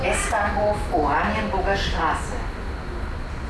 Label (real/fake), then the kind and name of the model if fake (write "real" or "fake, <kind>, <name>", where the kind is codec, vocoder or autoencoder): real